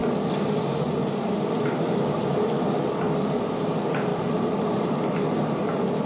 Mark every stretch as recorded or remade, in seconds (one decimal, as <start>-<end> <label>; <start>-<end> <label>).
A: 0.0-4.1 recorded; 4.1-4.8 remade; 4.8-6.0 recorded